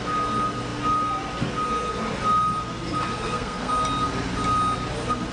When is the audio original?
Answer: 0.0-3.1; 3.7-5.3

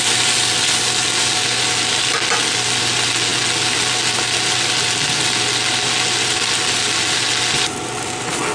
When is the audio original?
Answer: 0.0-8.5

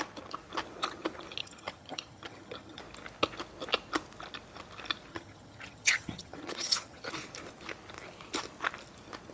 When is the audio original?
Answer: 0.0-1.4; 2.8-5.1; 7.1-9.3

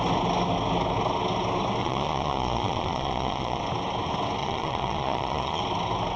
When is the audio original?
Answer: 0.0-1.8; 3.6-4.4; 5.6-6.2

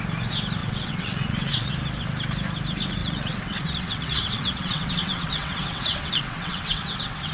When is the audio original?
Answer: 0.0-0.6; 1.7-3.0